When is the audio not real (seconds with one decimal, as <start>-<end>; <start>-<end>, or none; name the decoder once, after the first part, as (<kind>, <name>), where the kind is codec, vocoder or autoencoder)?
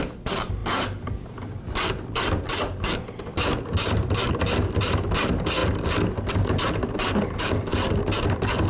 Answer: none